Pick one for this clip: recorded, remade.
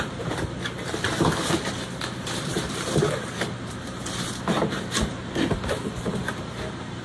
remade